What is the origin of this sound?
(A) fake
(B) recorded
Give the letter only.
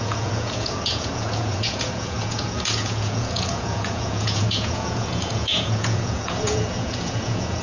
A